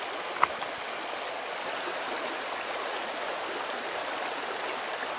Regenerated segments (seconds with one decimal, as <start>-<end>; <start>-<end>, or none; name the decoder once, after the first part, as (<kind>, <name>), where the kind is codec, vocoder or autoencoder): none